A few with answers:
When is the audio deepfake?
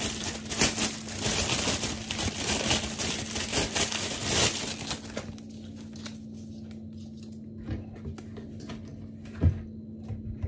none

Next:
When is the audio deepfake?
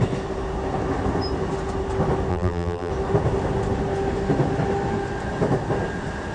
2.3-2.9 (vocoder, BigVGAN v2)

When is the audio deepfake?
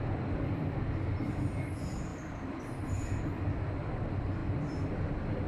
none